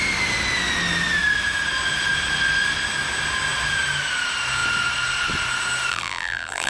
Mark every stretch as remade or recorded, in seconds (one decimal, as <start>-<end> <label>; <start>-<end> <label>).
0.0-5.9 recorded; 5.9-6.7 remade